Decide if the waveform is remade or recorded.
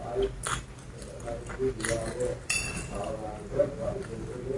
recorded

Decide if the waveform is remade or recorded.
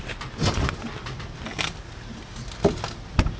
recorded